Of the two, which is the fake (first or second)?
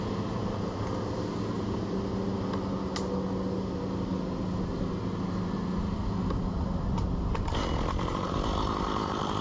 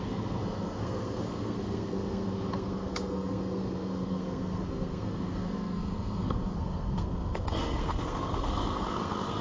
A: second